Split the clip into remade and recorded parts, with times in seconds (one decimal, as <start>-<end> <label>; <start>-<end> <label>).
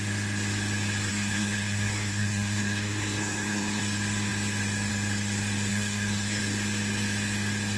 0.0-1.1 recorded; 1.1-3.8 remade; 3.8-5.7 recorded; 5.7-6.4 remade; 6.4-7.8 recorded